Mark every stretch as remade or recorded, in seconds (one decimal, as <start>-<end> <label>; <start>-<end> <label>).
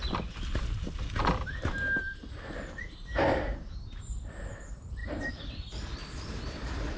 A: 0.0-7.0 recorded